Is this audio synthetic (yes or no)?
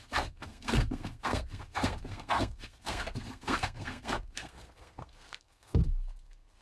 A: yes